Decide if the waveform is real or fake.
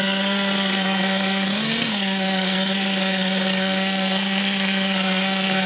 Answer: fake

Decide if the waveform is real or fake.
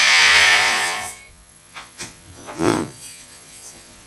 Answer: fake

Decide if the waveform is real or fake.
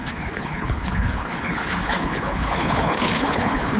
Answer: fake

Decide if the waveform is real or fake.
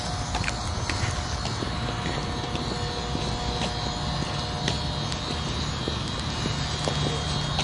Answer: real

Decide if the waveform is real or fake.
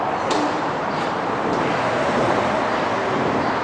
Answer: fake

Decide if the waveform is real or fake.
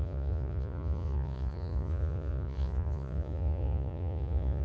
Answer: fake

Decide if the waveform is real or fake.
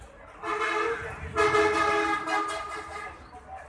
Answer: real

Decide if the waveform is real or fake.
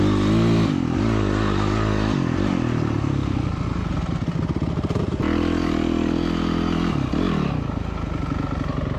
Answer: real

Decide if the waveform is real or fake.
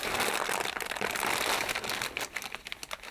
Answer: real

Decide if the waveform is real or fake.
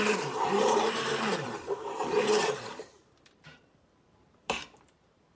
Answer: fake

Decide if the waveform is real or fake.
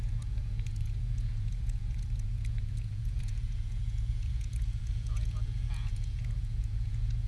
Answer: fake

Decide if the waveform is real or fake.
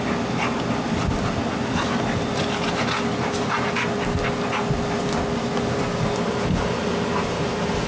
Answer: real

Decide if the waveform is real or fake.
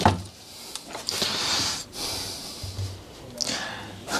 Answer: real